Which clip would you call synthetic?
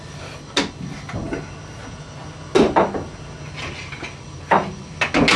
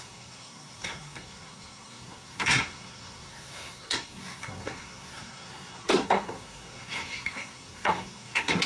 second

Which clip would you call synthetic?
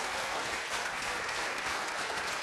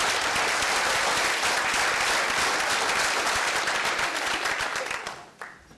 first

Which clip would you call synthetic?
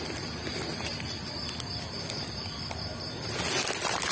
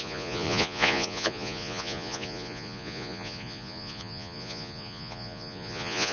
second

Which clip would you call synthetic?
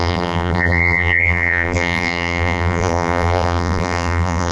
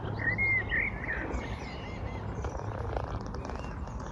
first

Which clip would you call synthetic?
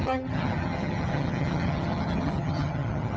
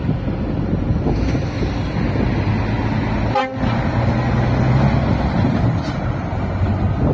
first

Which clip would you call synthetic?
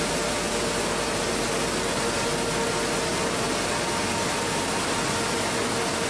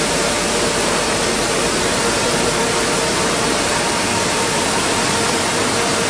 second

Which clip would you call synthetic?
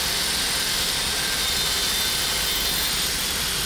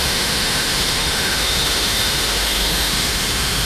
second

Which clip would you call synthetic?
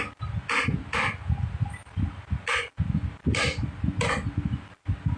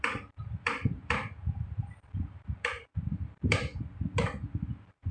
second